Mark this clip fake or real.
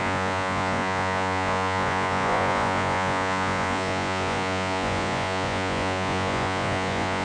fake